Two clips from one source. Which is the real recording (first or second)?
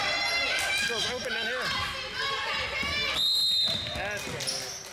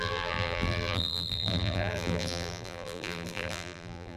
first